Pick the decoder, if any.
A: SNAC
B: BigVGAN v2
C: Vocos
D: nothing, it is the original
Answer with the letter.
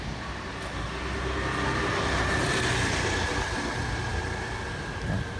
D